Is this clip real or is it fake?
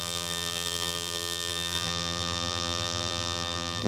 fake